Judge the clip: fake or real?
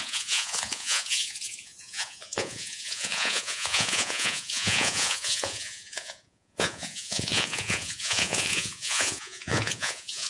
fake